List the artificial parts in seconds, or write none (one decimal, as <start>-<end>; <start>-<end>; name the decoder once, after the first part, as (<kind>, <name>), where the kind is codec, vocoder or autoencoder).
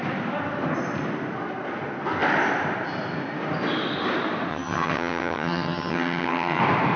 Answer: 4.5-6.6 (vocoder, HiFi-GAN)